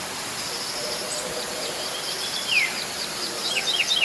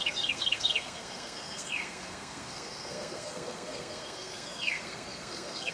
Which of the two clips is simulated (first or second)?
second